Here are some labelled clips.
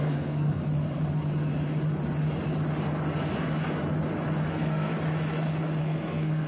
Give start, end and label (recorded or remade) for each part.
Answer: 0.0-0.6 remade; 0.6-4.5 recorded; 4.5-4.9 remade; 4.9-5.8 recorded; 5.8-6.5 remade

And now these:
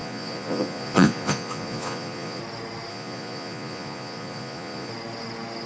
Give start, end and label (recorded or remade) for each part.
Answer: 0.0-2.4 remade; 2.4-2.9 recorded; 2.9-4.9 remade; 4.9-5.7 recorded